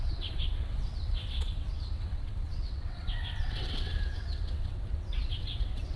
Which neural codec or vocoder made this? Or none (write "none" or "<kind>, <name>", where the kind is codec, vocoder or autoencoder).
vocoder, WaveNeXt